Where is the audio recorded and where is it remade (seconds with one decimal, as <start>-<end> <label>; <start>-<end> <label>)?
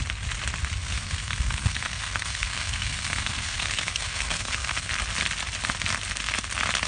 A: 0.0-0.8 recorded; 0.8-4.9 remade; 4.9-6.9 recorded